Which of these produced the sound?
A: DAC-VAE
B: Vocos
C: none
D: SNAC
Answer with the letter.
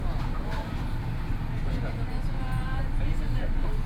C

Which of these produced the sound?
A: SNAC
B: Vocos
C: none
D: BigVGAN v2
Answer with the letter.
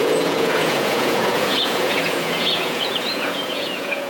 B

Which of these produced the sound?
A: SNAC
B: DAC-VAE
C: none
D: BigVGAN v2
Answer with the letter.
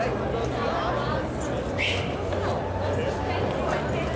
C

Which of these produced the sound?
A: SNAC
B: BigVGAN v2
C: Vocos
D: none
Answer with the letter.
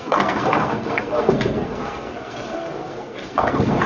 A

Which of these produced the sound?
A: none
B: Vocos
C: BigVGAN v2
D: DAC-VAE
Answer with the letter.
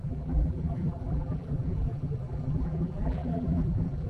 C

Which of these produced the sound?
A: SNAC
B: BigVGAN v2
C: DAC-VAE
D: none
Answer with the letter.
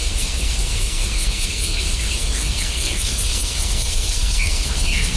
A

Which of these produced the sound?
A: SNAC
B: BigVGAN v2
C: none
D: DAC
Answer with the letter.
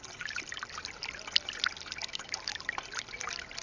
C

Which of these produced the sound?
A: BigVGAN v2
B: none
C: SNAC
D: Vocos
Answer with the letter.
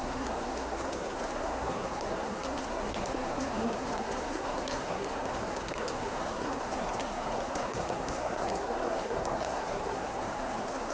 C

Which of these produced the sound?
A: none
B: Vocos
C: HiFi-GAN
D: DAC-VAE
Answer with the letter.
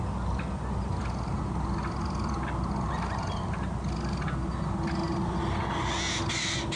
A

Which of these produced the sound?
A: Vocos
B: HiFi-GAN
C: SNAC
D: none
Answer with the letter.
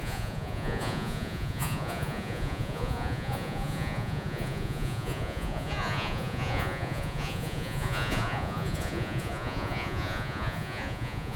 A